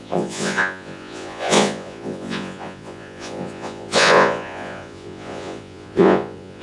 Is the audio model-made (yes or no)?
yes